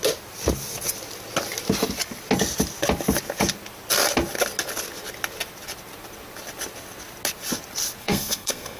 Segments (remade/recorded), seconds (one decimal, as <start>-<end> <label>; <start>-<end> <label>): 0.0-8.0 recorded; 8.0-8.8 remade